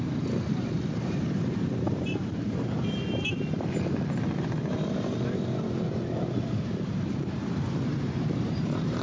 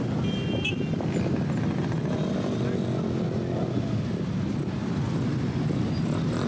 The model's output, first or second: first